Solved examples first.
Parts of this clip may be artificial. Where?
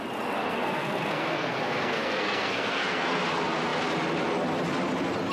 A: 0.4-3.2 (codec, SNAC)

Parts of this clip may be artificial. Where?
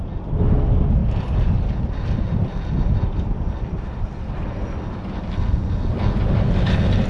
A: 1.0-5.3 (vocoder, BigVGAN v2)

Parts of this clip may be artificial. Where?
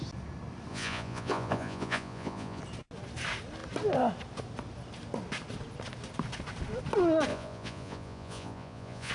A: 0.7-2.6 (vocoder, Vocos); 7.3-9.1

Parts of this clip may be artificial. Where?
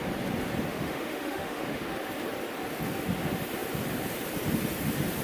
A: 0.7-1.9 (autoencoder, DAC-VAE)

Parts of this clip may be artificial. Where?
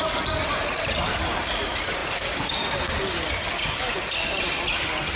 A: none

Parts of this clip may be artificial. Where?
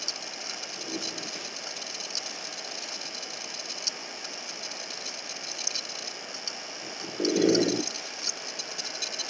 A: none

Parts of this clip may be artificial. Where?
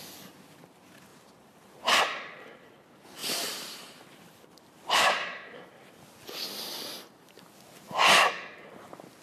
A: 1.1-2.0 (vocoder, BigVGAN v2); 3.2-5.6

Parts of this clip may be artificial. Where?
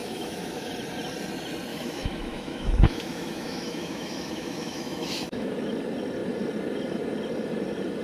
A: 0.0-0.7 (autoencoder, DAC-VAE); 1.7-5.5